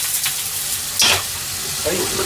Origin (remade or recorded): recorded